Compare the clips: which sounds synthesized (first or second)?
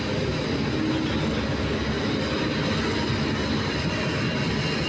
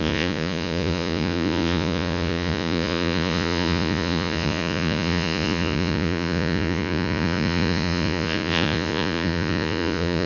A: second